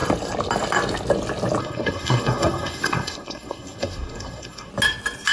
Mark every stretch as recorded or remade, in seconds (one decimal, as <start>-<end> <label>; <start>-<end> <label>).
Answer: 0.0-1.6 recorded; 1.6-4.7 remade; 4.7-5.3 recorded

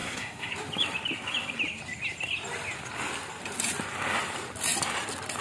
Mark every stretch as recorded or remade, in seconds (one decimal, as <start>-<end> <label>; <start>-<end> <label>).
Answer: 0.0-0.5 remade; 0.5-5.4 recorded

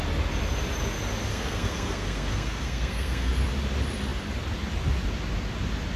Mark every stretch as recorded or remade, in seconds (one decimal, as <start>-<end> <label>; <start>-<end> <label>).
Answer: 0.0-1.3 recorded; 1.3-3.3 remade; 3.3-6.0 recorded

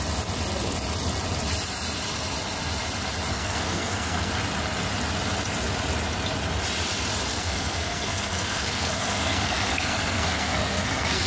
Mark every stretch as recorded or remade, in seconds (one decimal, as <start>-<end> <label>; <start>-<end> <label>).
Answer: 0.0-3.3 recorded; 3.3-4.3 remade; 4.3-7.3 recorded; 7.3-11.3 remade

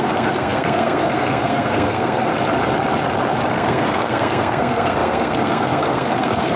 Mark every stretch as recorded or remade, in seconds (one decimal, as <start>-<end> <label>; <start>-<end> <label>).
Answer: 0.0-2.3 remade; 2.3-3.5 recorded; 3.5-6.6 remade